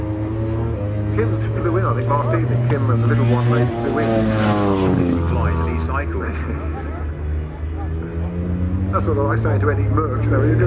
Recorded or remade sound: recorded